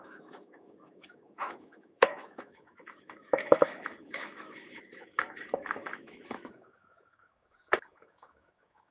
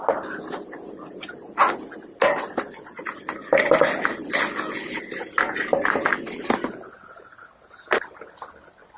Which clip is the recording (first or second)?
second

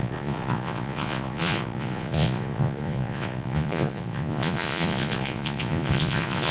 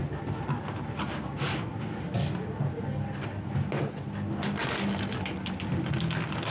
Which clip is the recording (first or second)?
second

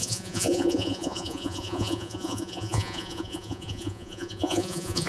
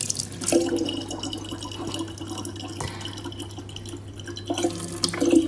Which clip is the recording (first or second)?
second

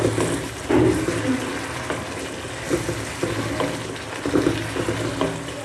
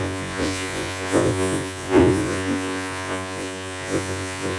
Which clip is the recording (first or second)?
first